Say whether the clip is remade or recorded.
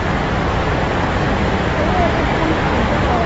remade